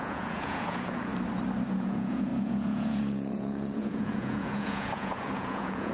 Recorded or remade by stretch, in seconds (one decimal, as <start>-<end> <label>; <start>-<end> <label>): 0.0-1.1 remade; 1.1-1.7 recorded; 1.7-5.9 remade